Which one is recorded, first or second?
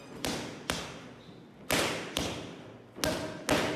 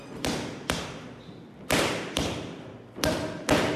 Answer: first